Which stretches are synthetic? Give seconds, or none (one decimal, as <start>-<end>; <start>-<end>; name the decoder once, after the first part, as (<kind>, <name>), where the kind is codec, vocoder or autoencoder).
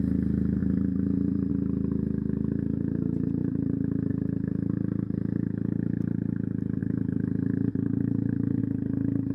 0.6-1.5 (vocoder, BigVGAN v2); 3.4-4.1; 6.8-8.6